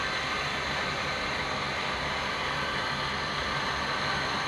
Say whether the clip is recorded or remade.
recorded